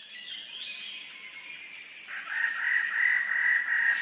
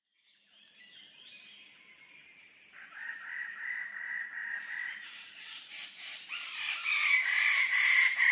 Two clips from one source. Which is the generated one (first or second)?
second